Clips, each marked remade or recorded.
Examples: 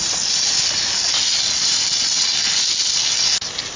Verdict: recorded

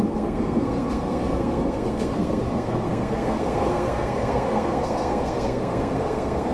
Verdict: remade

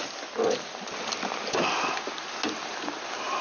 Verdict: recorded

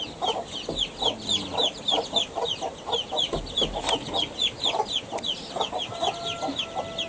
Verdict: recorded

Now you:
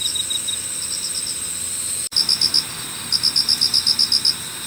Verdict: recorded